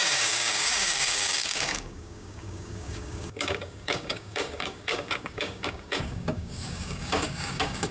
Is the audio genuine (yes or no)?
no